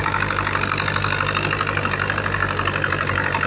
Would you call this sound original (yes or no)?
yes